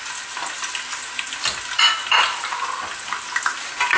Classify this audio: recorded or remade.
recorded